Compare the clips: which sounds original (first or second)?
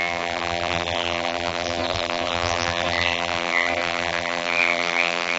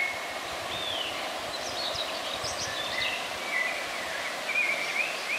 second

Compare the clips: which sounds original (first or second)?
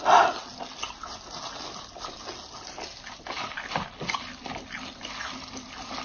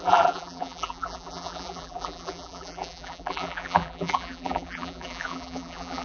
first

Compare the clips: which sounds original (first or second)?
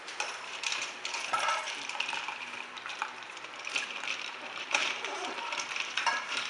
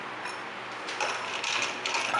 second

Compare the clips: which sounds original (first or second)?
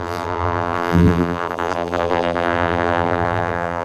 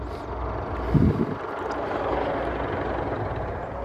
second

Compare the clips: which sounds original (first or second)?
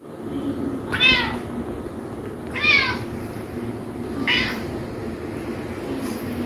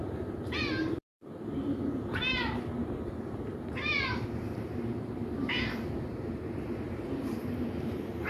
first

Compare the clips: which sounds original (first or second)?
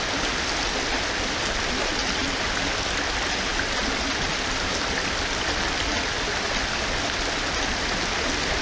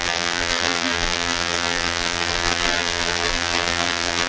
first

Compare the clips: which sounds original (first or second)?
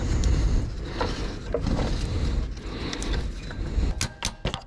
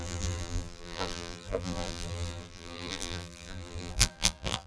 first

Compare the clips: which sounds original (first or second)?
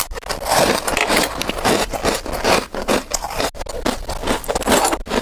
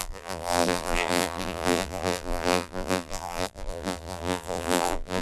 first